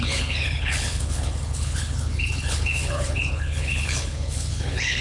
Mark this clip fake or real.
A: fake